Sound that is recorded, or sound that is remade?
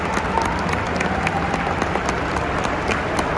recorded